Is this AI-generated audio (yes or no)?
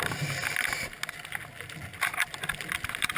no